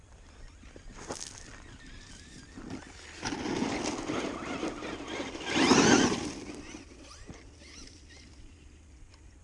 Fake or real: real